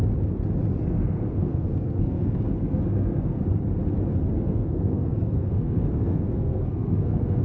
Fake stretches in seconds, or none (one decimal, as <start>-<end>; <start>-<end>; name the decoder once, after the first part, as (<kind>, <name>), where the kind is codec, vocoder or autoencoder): 0.9-3.4 (codec, SNAC); 4.3-7.4